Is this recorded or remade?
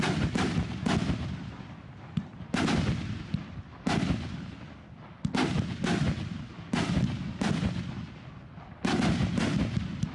recorded